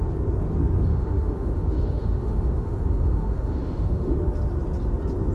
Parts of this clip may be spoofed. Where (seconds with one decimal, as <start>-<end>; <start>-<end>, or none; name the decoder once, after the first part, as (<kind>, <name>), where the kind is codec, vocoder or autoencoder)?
0.9-4.1 (autoencoder, DAC-VAE)